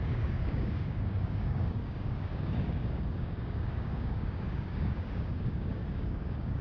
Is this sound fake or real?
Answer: fake